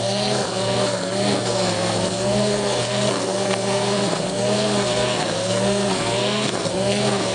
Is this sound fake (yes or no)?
yes